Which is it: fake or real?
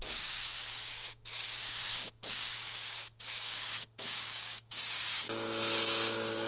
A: fake